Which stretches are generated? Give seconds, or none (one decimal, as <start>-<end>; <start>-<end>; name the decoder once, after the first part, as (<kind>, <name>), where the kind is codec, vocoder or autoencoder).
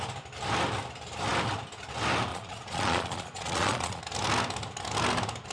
2.3-4.0 (vocoder, Vocos)